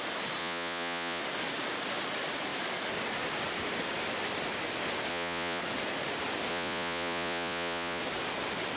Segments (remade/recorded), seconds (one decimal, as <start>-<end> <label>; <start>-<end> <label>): 0.0-0.4 recorded; 0.4-1.2 remade; 1.2-5.1 recorded; 5.1-5.6 remade; 5.6-6.5 recorded; 6.5-8.0 remade; 8.0-8.8 recorded